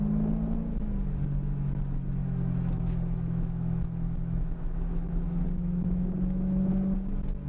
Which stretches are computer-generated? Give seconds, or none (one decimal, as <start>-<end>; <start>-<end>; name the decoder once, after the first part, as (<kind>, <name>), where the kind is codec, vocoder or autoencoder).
2.2-6.7 (autoencoder, DAC-VAE)